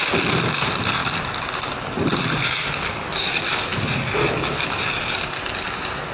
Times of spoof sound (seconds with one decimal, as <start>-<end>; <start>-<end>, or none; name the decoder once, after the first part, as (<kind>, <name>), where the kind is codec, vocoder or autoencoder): none